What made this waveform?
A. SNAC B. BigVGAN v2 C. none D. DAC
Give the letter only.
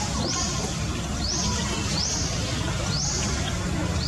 C